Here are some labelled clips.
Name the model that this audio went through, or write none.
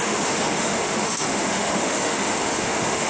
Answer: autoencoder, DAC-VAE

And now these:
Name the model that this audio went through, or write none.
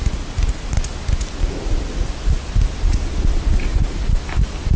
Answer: none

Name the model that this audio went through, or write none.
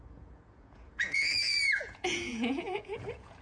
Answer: vocoder, Vocos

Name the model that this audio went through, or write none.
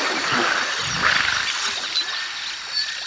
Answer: none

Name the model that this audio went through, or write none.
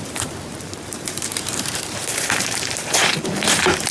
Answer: vocoder, BigVGAN v2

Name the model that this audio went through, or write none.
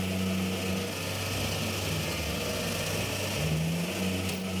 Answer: none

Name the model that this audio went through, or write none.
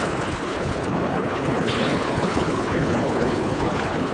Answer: codec, HILCodec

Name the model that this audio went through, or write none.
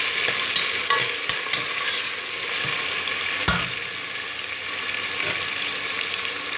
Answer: none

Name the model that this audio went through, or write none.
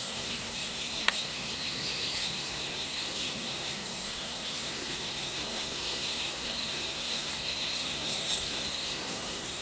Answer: codec, SNAC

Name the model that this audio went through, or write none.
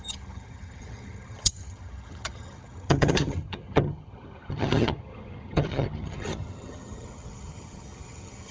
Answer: vocoder, HiFi-GAN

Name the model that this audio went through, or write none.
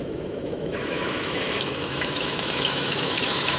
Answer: autoencoder, DAC-VAE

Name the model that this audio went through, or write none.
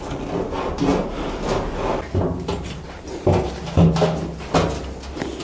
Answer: none